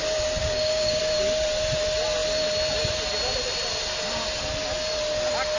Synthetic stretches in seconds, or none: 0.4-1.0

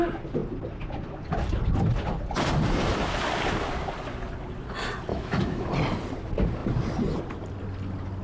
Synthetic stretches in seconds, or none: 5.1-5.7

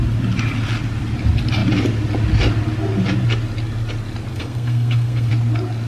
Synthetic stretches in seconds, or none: 4.3-5.3

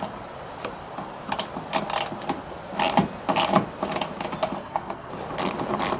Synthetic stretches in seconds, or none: 4.6-5.1